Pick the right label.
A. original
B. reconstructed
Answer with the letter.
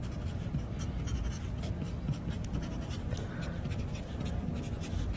A